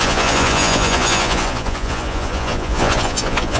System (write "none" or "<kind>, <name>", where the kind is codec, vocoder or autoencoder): vocoder, Vocos